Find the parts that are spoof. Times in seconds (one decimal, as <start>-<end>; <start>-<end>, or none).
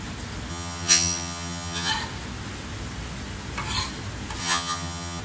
0.5-1.9; 4.4-5.2